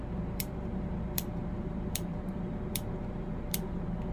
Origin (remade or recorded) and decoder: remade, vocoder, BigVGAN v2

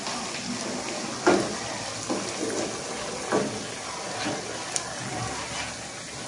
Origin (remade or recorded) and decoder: recorded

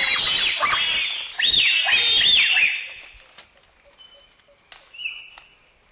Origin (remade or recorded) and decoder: recorded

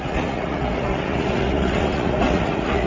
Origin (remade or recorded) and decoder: remade, vocoder, Vocos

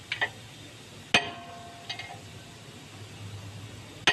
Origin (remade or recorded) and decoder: recorded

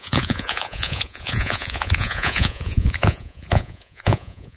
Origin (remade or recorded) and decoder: remade, vocoder, Vocos